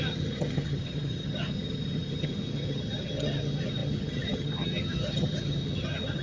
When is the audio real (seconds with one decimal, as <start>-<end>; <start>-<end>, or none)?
none